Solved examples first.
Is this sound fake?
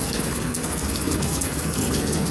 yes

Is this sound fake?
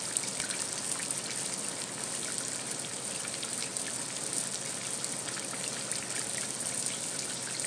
no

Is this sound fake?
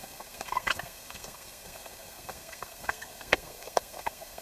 yes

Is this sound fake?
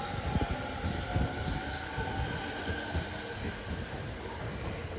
no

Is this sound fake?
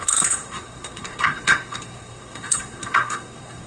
yes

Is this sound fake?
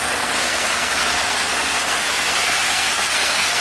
yes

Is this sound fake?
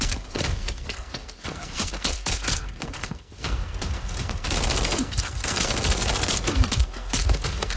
yes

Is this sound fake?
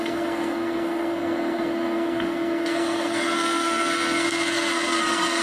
yes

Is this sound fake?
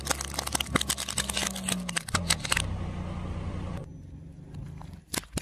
no